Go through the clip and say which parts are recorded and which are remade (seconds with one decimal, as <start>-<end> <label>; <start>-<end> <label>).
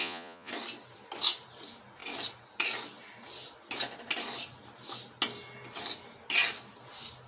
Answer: 0.0-0.5 remade; 0.5-7.3 recorded